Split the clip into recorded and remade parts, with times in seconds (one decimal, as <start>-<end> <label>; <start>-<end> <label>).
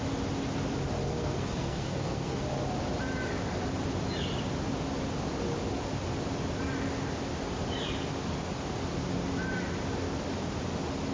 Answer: 0.0-1.1 recorded; 1.1-2.4 remade; 2.4-11.1 recorded